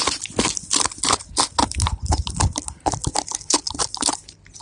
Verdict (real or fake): real